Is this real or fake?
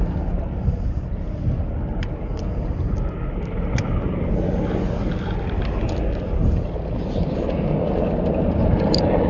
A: real